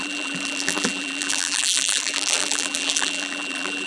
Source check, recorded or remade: remade